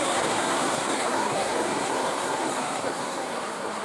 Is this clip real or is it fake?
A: fake